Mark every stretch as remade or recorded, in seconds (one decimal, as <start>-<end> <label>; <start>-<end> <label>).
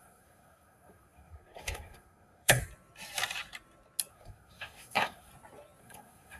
0.0-2.6 remade; 2.6-4.1 recorded; 4.1-5.3 remade; 5.3-5.8 recorded; 5.8-6.4 remade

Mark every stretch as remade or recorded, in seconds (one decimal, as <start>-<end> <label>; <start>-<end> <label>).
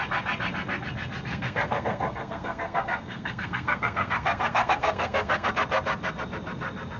0.0-1.3 recorded; 1.3-5.5 remade; 5.5-7.0 recorded